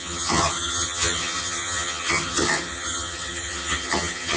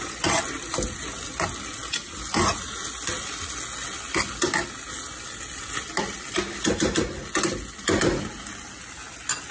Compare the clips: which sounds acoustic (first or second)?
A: second